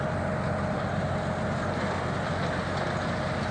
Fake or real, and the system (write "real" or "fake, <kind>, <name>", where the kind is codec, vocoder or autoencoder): real